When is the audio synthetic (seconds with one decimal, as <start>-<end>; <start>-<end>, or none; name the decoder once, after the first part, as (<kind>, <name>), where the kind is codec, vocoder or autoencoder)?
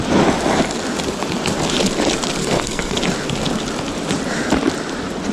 2.4-3.0 (codec, SNAC)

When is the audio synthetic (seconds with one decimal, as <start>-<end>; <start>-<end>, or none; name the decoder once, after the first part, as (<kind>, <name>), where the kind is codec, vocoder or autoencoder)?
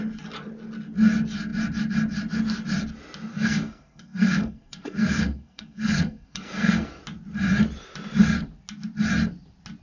3.3-7.0 (codec, SNAC)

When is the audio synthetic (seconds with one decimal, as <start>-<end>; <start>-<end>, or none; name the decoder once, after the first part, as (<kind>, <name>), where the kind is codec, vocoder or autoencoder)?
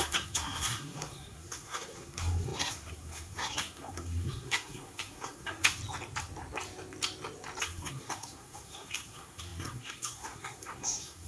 0.0-5.8 (codec, SNAC); 7.6-11.3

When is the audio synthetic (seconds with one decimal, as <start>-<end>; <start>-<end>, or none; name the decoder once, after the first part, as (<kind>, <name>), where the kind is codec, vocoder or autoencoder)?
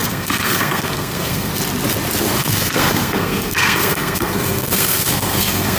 0.0-1.5 (codec, SNAC); 2.2-5.8